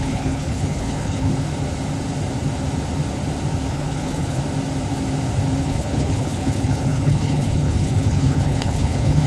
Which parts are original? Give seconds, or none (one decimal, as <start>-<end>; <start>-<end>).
1.3-3.7; 4.4-5.6